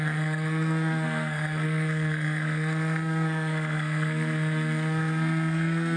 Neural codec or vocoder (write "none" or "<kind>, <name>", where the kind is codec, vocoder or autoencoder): codec, SNAC